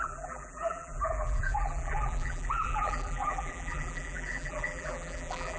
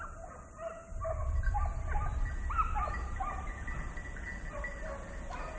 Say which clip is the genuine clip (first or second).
second